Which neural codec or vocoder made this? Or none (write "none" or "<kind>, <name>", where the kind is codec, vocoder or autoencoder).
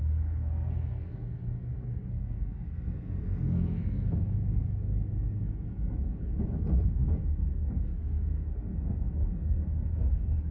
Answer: codec, SNAC